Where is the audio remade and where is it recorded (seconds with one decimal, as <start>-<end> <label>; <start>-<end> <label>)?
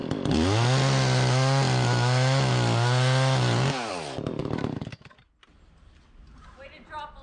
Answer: 0.0-4.4 recorded; 4.4-5.1 remade; 5.1-7.2 recorded